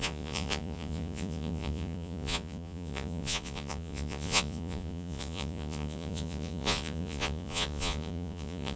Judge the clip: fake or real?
fake